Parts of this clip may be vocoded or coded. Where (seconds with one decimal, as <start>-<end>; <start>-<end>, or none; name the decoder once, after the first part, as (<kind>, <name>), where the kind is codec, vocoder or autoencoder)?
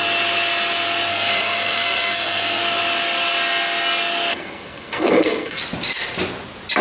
1.1-2.6 (codec, SNAC); 4.3-5.6